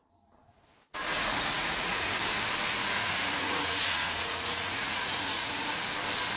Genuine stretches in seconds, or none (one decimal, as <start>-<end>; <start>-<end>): 0.0-1.1; 2.1-2.8; 5.8-6.4